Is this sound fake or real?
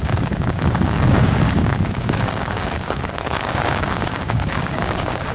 fake